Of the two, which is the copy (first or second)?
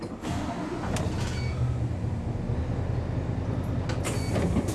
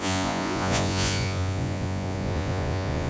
second